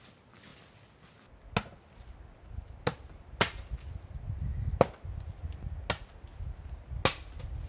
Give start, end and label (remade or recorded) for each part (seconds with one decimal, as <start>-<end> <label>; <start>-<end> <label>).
0.0-7.7 recorded